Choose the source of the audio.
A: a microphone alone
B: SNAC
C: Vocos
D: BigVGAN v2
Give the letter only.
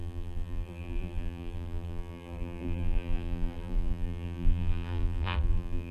D